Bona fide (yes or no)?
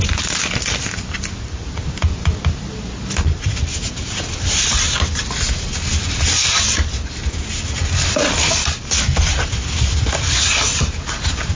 yes